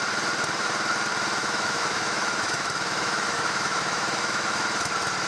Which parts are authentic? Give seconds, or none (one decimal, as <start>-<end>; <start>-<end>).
0.0-1.4; 4.6-5.3